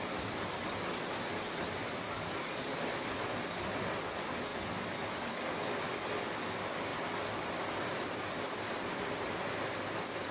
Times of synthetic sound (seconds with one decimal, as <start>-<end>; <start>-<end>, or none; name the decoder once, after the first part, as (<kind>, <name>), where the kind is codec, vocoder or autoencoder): none